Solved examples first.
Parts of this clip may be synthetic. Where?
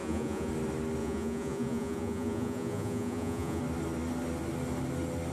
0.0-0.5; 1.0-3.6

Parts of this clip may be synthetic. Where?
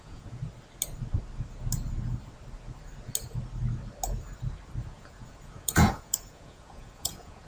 0.0-0.4; 4.9-7.5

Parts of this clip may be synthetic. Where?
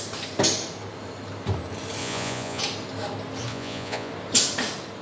2.0-2.6; 3.5-4.1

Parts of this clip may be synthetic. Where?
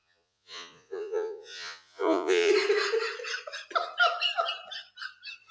0.0-2.5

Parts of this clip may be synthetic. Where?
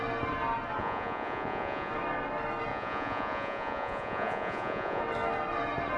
0.8-1.9; 2.7-5.0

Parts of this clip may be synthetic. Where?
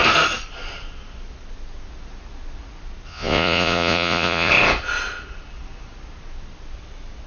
3.1-4.5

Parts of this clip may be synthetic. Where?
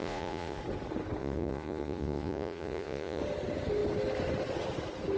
0.0-0.6; 1.2-3.2